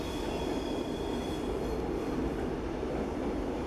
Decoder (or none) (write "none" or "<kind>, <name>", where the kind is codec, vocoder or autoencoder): none